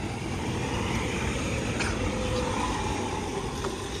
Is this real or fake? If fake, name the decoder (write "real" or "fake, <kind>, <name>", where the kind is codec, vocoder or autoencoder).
real